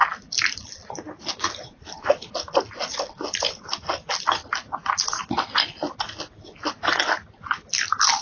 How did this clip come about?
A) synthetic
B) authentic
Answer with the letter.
B